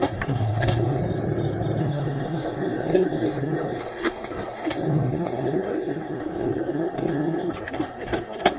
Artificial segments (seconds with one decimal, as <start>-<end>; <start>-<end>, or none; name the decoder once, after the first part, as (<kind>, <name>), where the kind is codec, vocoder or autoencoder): 0.0-1.0 (codec, SNAC); 1.8-8.6